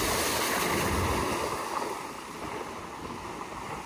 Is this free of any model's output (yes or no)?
yes